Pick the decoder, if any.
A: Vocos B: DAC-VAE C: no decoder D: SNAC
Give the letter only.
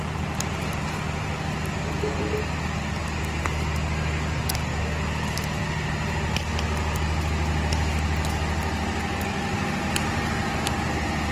C